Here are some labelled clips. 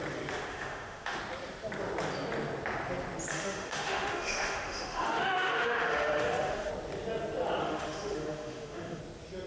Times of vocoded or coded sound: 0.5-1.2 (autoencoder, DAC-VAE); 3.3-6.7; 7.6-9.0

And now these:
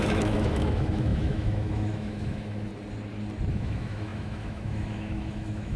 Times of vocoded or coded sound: 0.0-2.7 (autoencoder, DAC-VAE); 3.5-5.8

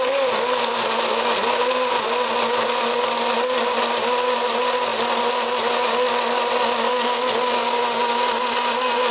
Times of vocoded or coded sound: none

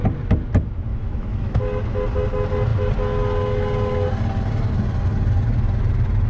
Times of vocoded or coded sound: 0.9-1.6 (autoencoder, DAC-VAE)

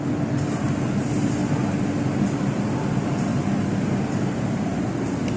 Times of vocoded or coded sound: none

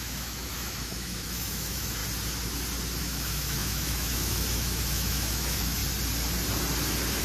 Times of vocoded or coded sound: 0.0-2.0 (autoencoder, DAC-VAE); 3.0-5.8

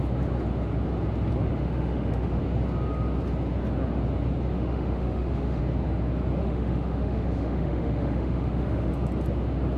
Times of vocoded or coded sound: 1.5-2.4 (autoencoder, DAC-VAE); 4.5-5.6; 6.4-8.9